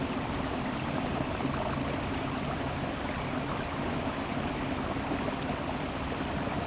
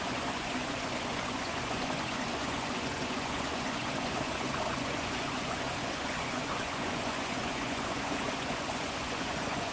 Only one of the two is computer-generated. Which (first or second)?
second